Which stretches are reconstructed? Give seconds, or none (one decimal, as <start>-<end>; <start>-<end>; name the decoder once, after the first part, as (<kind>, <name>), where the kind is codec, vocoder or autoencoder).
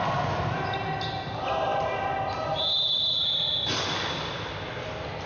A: none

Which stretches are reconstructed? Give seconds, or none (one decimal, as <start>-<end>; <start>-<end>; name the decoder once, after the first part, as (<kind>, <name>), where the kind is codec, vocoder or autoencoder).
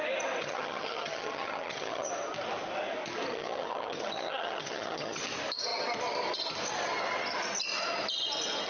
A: 0.4-2.1 (vocoder, HiFi-GAN); 3.3-5.2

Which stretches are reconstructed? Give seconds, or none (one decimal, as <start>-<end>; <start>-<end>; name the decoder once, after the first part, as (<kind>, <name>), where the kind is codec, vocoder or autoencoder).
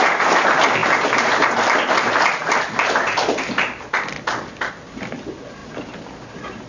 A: none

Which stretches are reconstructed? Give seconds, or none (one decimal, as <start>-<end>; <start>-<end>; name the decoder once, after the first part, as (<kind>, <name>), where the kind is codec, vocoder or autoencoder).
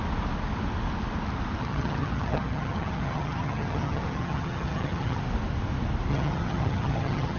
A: 1.6-5.2 (vocoder, HiFi-GAN); 6.1-7.4